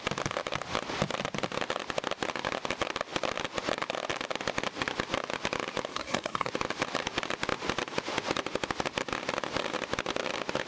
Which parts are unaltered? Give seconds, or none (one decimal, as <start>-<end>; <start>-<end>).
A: 0.0-5.9; 6.5-10.7